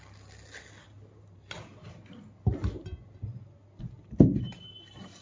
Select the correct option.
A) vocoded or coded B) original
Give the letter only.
B